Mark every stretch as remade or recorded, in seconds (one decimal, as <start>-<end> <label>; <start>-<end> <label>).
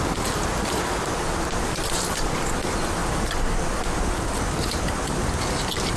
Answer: 0.0-6.0 recorded